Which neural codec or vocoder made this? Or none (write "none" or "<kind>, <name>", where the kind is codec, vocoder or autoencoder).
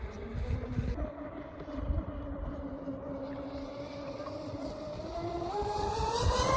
none